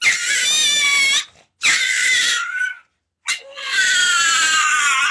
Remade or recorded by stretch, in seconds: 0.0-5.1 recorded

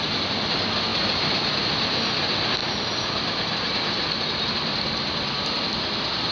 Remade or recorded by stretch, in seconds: 0.0-0.9 recorded; 0.9-1.5 remade; 1.5-6.3 recorded

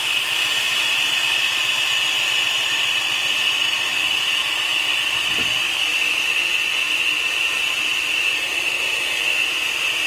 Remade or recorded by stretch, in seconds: 0.0-10.1 recorded

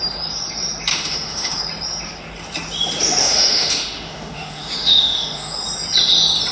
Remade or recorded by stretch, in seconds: 0.0-0.9 recorded; 0.9-1.6 remade; 1.6-3.2 recorded; 3.2-5.5 remade; 5.5-6.5 recorded

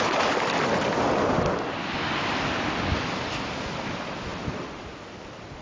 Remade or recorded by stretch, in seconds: 0.0-5.6 recorded

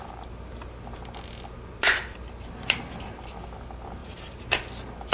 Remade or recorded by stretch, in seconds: 0.0-5.1 recorded

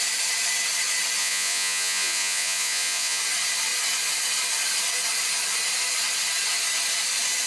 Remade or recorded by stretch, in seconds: 0.0-1.2 recorded; 1.2-3.2 remade; 3.2-7.5 recorded

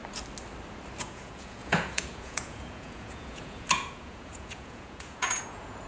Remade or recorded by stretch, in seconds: 0.0-1.0 recorded; 1.0-5.9 remade